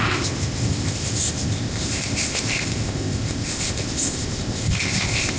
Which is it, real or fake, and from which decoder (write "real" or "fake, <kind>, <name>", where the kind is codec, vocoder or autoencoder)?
fake, codec, ZipCodec